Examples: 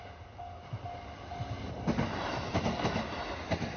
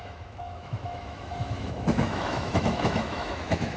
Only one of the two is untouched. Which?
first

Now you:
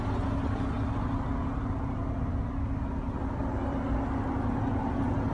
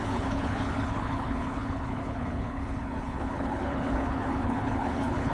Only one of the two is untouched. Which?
first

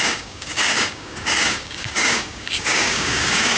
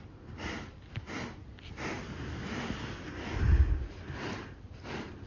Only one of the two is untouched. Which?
second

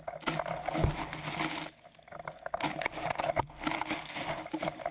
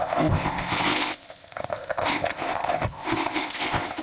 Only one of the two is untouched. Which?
first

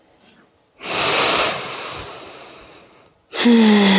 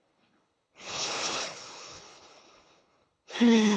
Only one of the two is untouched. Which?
first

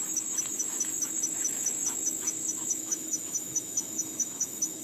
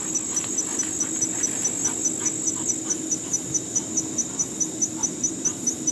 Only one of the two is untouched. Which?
second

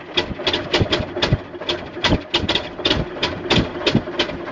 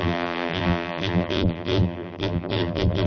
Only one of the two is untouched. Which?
first